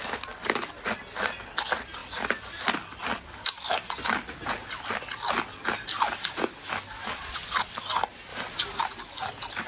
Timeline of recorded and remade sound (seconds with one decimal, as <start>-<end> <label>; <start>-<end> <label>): 0.0-7.0 recorded; 7.0-7.7 remade; 7.7-9.7 recorded